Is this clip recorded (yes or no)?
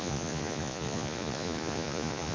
no